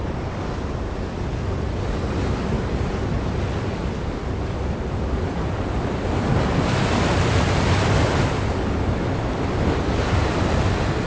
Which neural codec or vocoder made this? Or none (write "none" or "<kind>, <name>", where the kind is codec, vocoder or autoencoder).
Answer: none